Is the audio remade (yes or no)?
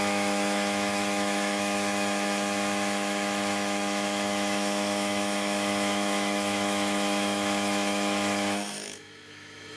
yes